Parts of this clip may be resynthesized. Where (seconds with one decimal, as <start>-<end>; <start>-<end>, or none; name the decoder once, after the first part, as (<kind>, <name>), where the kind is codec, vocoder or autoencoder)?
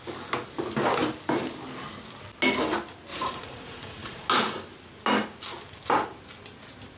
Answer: 3.1-4.3 (vocoder, Vocos)